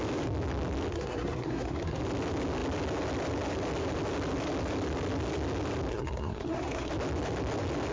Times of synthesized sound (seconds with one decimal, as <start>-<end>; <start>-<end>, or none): 0.9-2.0; 5.9-6.9